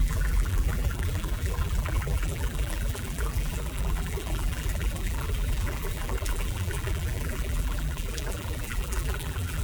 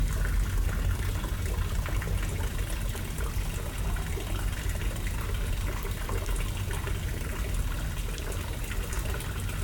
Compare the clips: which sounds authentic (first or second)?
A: second